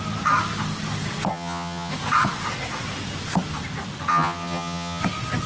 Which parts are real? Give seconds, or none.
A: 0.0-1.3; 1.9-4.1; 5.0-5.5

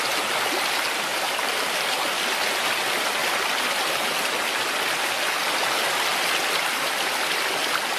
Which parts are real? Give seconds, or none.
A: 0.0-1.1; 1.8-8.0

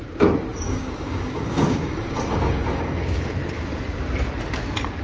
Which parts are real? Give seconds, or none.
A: 0.0-0.5; 3.3-5.0

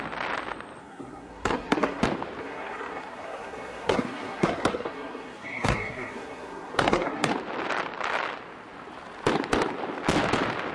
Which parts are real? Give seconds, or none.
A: 0.0-0.8; 2.0-2.4; 7.3-10.7